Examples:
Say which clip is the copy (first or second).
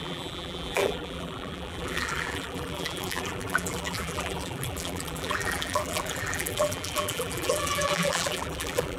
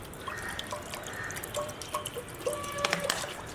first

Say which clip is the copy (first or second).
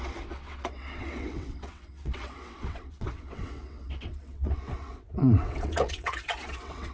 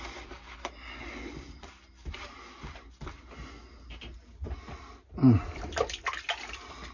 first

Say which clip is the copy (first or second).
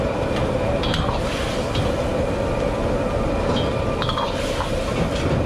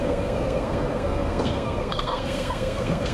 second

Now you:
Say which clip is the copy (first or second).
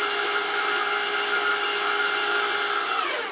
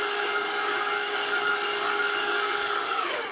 second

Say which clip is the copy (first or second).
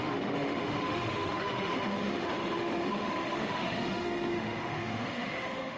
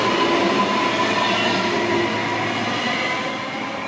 first